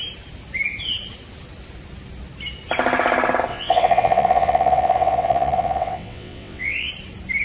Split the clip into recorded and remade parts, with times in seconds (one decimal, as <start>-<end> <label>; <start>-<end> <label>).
0.0-3.5 recorded; 3.5-6.9 remade; 6.9-7.4 recorded